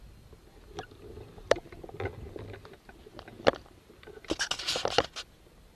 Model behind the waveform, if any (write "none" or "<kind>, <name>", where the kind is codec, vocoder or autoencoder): none